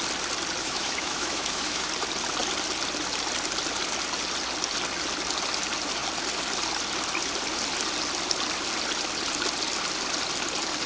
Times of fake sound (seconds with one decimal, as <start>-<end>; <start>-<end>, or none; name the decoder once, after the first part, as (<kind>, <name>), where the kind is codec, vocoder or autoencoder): 0.6-1.9 (autoencoder, DAC-VAE)